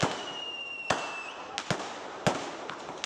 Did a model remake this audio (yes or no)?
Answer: no